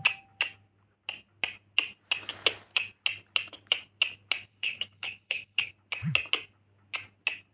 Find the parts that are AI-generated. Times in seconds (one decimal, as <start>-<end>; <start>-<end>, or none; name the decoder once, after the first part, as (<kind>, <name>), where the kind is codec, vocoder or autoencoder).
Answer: 4.5-5.7 (codec, HILCodec)